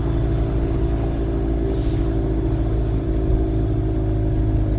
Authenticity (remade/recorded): recorded